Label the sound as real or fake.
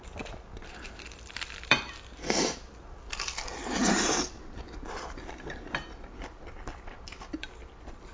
fake